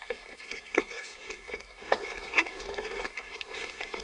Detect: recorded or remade remade